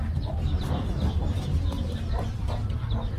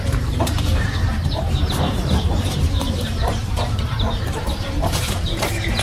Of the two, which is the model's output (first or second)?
second